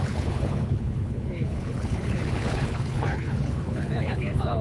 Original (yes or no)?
no